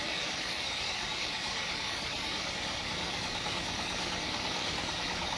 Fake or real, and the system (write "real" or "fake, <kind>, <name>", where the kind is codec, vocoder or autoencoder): fake, codec, DAC